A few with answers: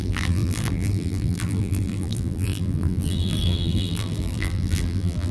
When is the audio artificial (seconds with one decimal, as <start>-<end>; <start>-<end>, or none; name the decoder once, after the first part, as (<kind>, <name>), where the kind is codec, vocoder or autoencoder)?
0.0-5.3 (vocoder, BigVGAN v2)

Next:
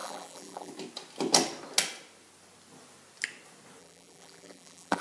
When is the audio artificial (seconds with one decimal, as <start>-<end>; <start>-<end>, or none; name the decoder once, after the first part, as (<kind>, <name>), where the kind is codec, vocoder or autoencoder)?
0.0-0.7 (vocoder, BigVGAN v2); 3.8-5.0

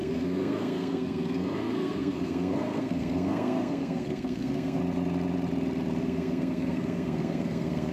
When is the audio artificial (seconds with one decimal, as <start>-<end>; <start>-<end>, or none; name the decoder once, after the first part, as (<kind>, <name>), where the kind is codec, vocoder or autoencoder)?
0.0-4.8 (codec, SNAC); 6.0-7.9

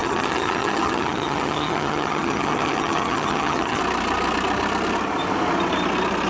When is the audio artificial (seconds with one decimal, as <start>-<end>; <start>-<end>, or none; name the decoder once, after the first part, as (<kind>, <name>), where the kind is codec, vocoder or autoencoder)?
0.0-3.8 (vocoder, HiFi-GAN)

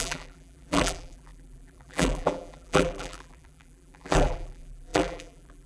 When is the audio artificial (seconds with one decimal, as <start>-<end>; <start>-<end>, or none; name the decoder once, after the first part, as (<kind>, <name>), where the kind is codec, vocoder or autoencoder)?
0.0-5.7 (vocoder, BigVGAN v2)

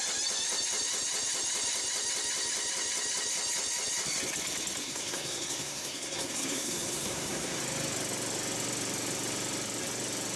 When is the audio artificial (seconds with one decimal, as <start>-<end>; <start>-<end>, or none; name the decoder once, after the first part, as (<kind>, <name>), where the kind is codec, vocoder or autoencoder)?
4.8-7.6 (codec, SNAC)

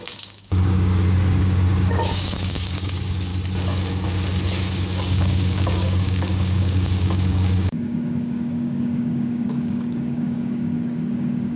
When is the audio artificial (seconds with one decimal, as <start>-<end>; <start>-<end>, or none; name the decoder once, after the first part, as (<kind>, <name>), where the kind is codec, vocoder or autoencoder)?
0.0-3.3 (codec, DAC); 4.7-11.6

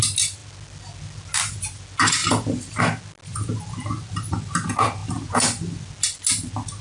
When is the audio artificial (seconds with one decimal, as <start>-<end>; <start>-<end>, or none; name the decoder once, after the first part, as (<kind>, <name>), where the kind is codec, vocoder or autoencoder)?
none